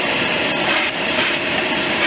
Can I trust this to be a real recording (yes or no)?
no